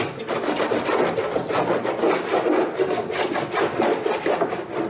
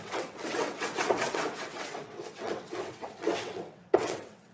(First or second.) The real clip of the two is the first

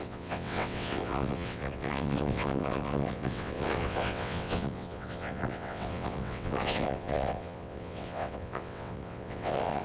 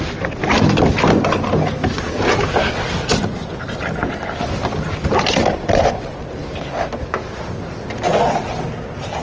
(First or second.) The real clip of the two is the second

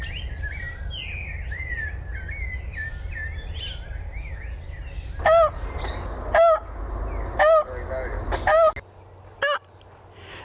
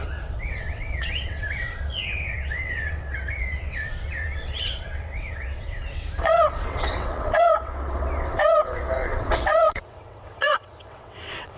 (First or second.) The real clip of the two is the first